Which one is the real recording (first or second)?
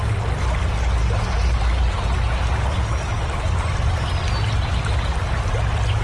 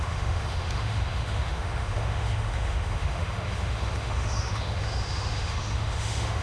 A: first